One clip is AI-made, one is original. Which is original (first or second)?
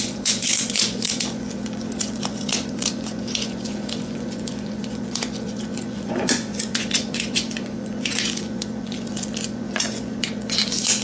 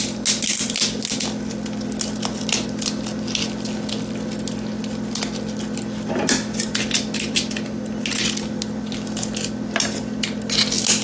second